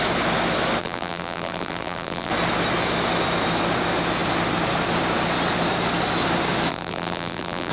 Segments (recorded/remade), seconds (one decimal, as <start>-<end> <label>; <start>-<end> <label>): 0.0-0.8 recorded; 0.8-2.3 remade; 2.3-6.7 recorded; 6.7-7.7 remade